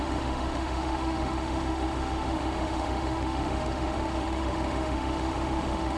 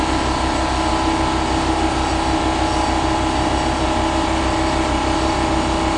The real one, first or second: second